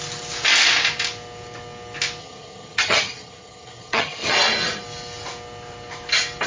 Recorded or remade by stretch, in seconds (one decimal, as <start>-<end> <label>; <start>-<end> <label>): 0.0-2.2 recorded; 2.2-4.3 remade; 4.3-6.5 recorded